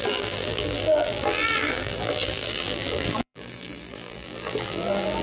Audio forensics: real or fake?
fake